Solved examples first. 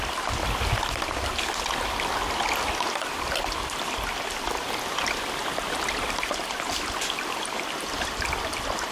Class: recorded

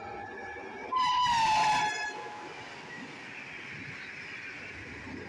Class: recorded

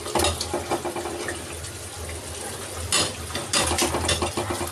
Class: recorded